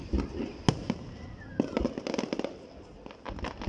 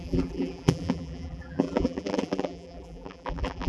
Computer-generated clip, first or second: second